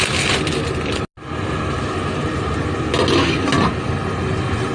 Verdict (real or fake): real